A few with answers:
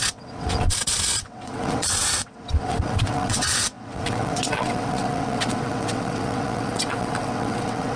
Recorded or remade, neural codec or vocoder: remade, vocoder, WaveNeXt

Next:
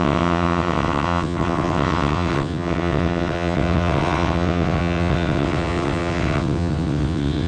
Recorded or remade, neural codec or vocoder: remade, vocoder, WaveNeXt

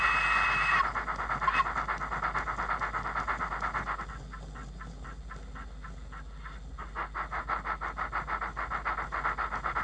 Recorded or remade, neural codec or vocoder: recorded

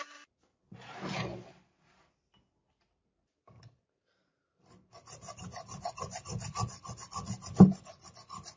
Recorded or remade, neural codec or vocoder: recorded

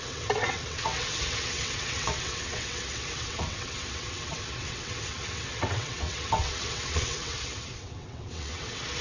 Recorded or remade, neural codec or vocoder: remade, vocoder, WaveNeXt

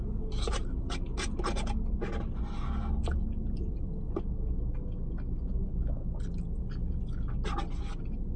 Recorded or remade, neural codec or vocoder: recorded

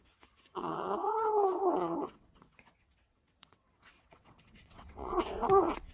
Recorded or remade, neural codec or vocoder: remade, vocoder, WaveNeXt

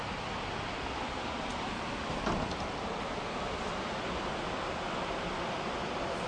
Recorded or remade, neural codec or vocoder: recorded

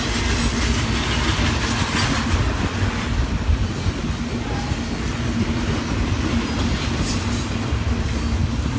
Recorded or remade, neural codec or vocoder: recorded